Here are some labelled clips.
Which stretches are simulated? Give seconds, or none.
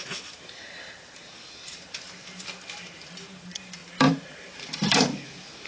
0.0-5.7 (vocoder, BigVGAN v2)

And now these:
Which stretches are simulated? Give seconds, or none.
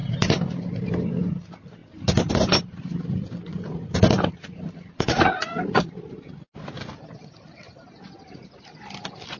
3.5-5.5 (vocoder, Vocos)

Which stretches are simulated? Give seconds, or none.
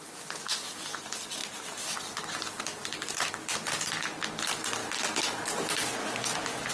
1.4-3.3 (vocoder, BigVGAN v2); 4.8-6.7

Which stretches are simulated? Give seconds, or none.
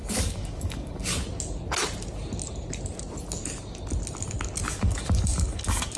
0.0-1.1 (codec, DAC); 4.7-6.0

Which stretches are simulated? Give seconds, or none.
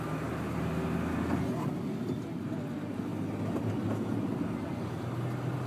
none